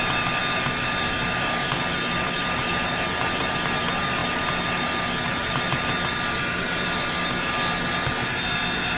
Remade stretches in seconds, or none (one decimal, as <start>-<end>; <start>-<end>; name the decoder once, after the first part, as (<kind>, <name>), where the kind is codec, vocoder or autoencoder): none